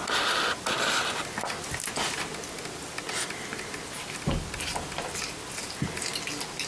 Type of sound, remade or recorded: recorded